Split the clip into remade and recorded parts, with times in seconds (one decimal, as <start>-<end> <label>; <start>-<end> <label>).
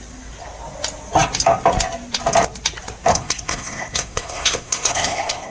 0.0-3.1 recorded; 3.1-5.5 remade